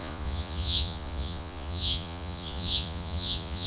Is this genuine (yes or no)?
no